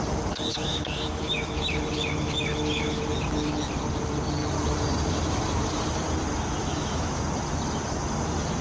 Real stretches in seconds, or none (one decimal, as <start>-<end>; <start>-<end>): 0.0-0.5; 3.0-6.6; 7.2-8.6